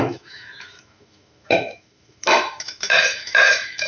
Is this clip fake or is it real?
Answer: fake